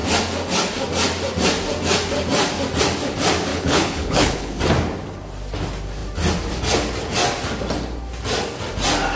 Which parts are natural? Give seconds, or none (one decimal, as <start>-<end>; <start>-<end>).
0.0-3.5; 4.6-9.2